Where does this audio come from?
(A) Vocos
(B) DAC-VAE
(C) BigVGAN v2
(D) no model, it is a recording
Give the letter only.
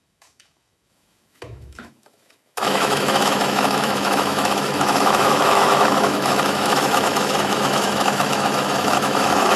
B